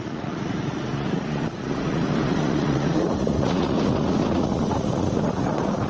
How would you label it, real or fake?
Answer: fake